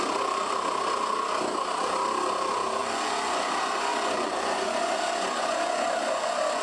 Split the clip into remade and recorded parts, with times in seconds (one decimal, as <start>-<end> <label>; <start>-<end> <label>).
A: 0.0-2.8 recorded; 2.8-6.6 remade